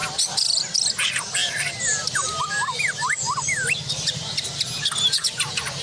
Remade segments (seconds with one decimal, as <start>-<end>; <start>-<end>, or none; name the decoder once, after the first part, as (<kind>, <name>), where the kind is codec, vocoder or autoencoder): none